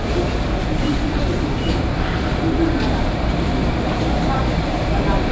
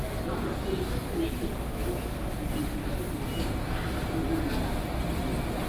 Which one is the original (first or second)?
second